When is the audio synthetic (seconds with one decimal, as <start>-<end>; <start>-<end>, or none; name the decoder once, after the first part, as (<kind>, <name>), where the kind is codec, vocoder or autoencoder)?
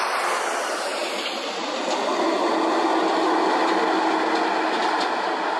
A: none